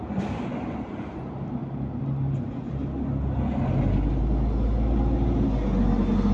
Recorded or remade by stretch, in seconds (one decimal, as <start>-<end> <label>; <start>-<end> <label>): 0.0-6.3 recorded